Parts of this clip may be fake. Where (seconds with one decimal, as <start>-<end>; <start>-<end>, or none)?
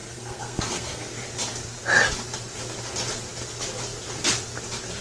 0.0-1.1